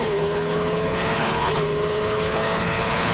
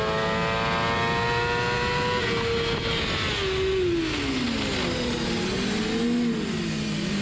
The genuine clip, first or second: second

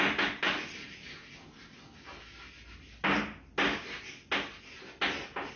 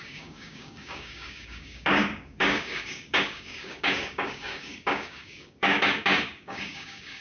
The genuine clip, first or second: first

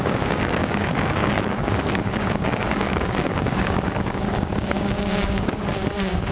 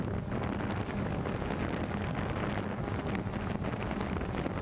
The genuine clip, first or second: second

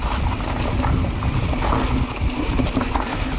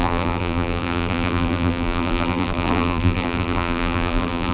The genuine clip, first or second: first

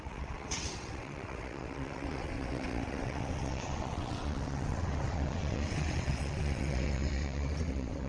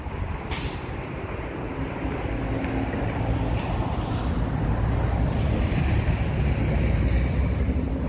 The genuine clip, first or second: second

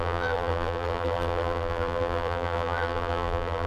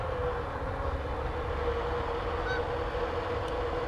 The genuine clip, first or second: second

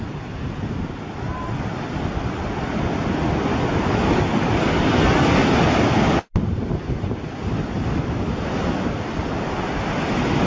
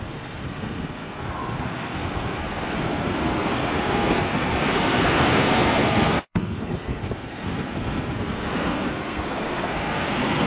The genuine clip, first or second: first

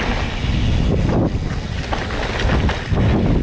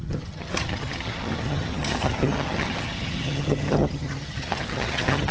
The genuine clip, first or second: first